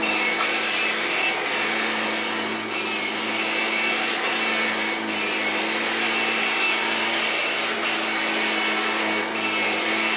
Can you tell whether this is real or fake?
real